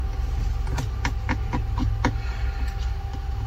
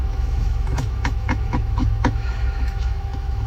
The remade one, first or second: second